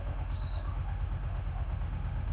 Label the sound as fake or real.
fake